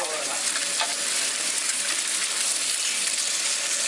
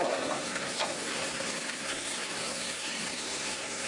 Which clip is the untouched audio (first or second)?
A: first